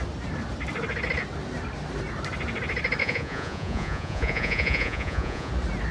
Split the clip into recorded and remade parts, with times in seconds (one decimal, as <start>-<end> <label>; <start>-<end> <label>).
0.0-3.0 recorded; 3.0-5.5 remade; 5.5-5.9 recorded